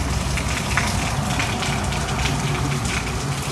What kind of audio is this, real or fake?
real